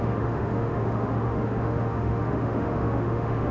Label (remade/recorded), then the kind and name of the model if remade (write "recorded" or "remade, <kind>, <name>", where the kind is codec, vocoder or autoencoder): remade, autoencoder, DAC-VAE